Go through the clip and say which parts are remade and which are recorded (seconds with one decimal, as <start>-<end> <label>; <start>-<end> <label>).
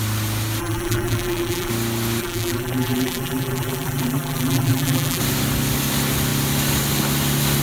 0.0-0.6 recorded; 0.6-1.7 remade; 1.7-2.2 recorded; 2.2-5.2 remade; 5.2-7.6 recorded